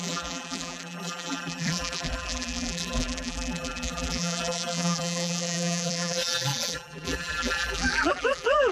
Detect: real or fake fake